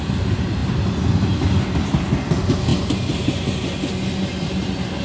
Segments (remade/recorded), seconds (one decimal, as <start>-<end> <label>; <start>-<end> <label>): 0.0-5.0 recorded